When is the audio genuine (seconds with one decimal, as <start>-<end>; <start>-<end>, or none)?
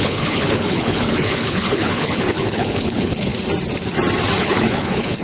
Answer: 3.3-4.4